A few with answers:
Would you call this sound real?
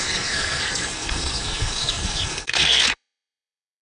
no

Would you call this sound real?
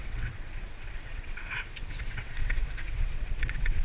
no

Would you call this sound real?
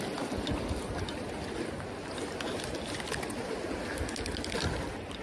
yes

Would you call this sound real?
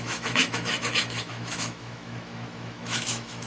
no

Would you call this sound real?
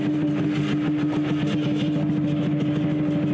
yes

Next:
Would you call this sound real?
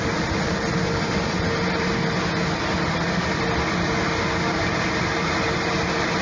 yes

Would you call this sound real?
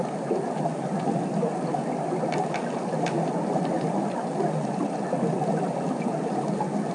yes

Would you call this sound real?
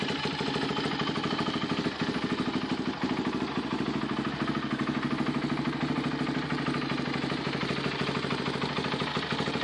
yes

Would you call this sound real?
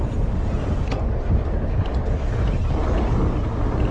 yes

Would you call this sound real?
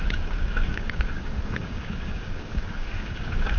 no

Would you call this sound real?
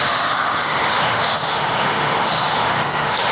no